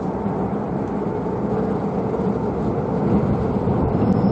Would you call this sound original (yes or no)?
yes